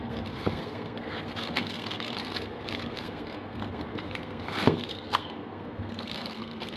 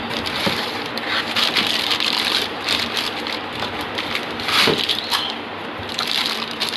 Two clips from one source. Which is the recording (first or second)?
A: second